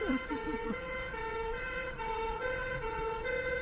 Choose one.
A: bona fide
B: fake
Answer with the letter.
B